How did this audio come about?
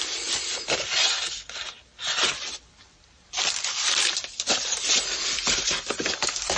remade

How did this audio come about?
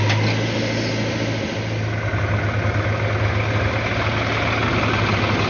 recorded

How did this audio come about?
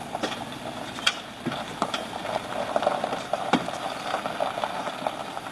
remade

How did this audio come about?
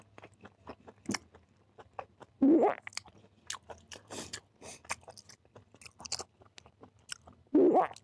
recorded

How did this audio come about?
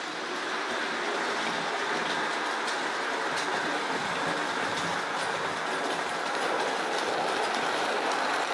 recorded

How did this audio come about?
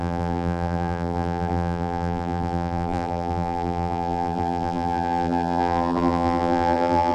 remade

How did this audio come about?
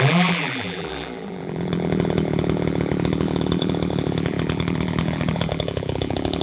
remade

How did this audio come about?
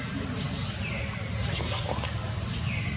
remade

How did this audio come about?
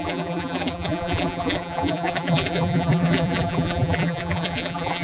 remade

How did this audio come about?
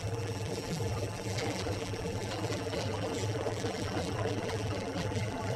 remade